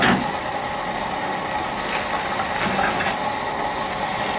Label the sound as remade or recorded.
recorded